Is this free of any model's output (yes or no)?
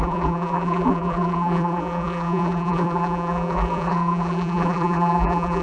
no